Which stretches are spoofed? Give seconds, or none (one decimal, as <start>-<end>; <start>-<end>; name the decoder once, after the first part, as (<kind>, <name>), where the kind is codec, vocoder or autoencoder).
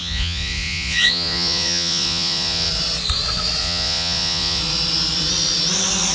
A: 0.0-2.7 (vocoder, Vocos); 3.6-4.6